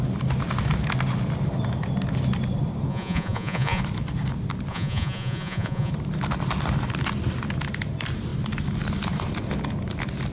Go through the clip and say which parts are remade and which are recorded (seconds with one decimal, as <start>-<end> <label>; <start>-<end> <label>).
0.0-2.9 recorded; 2.9-3.8 remade; 3.8-4.7 recorded; 4.7-5.9 remade; 5.9-10.3 recorded